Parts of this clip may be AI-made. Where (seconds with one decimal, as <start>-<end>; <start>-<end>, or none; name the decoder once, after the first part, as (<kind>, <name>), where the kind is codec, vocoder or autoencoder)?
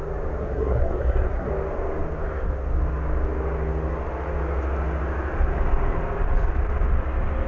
0.4-1.5 (codec, SNAC)